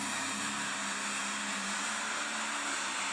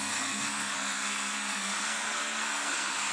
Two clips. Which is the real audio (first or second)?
first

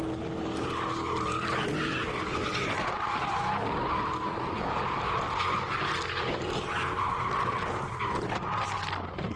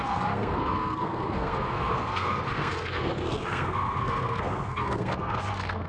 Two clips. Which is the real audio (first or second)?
first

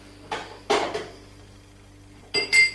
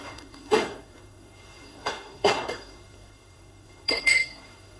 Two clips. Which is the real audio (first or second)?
first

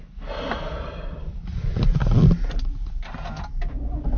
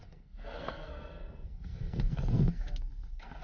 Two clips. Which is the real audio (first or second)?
first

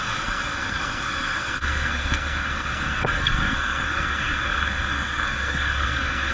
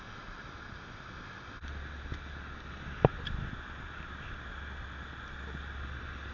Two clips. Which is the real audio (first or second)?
second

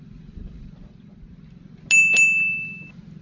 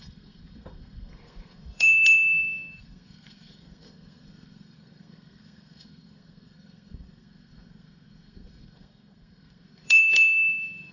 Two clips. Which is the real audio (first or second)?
first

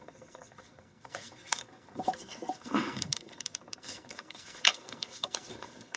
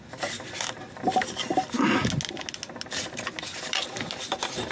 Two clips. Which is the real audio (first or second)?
second